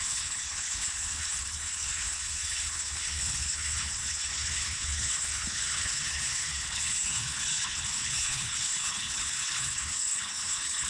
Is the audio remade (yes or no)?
yes